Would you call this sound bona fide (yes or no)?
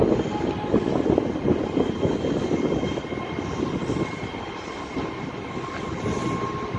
yes